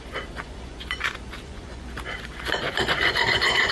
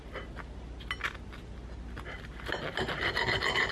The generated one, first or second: first